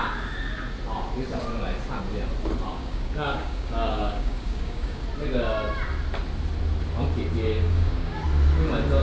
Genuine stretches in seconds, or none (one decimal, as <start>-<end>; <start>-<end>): 0.0-2.7; 5.0-7.4; 8.2-9.0